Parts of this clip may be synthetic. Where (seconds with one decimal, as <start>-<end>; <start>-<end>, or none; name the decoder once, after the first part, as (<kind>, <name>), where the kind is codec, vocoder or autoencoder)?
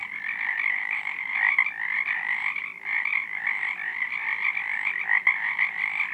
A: none